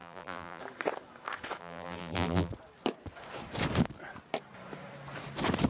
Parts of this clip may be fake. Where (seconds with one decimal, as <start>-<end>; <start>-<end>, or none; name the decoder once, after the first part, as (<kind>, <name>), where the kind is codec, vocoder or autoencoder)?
0.0-0.6 (vocoder, BigVGAN v2); 1.6-2.5